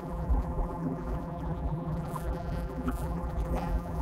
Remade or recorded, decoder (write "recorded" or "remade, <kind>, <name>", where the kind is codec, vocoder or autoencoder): remade, vocoder, BigVGAN v2